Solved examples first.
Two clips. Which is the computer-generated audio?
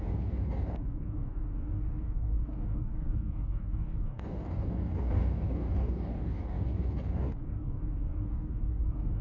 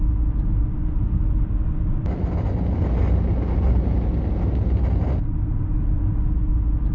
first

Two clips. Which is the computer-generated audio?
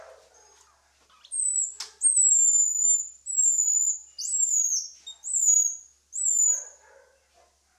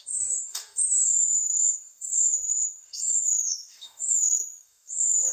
second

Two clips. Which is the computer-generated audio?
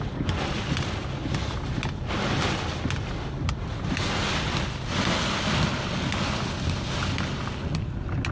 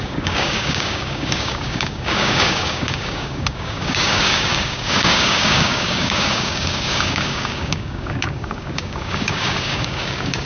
second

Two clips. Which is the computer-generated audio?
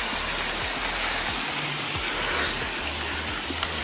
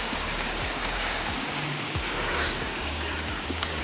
second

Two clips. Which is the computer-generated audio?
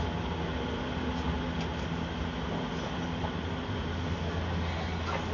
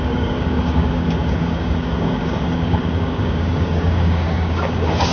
second